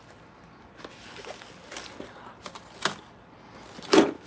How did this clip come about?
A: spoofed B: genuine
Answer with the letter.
B